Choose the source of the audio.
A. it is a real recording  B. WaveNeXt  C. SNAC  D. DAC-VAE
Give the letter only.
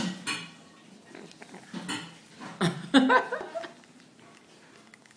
A